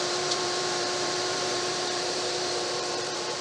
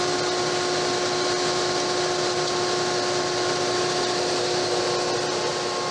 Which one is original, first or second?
second